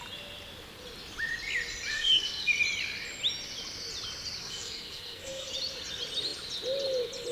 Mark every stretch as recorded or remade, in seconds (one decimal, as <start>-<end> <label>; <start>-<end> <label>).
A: 0.0-1.9 recorded; 1.9-2.6 remade; 2.6-4.4 recorded; 4.4-5.5 remade; 5.5-7.3 recorded